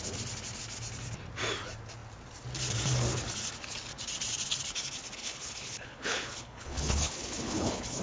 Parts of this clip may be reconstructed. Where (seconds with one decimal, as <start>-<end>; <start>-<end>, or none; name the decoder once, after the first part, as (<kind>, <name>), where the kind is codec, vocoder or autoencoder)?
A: 5.2-8.0 (codec, HILCodec)